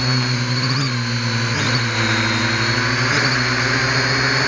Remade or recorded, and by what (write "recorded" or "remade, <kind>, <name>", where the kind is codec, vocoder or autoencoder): recorded